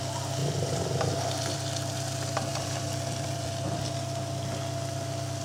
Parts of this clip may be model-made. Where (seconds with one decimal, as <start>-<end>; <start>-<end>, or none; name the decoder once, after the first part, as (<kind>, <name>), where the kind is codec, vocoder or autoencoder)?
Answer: 0.4-1.9 (vocoder, BigVGAN v2); 2.5-3.8